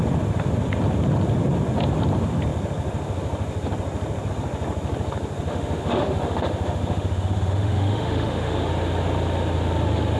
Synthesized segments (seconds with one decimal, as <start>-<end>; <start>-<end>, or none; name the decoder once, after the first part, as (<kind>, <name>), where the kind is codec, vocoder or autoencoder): 5.5-8.7 (autoencoder, DAC-VAE)